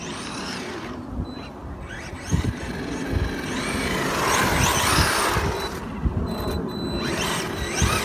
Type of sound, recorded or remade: recorded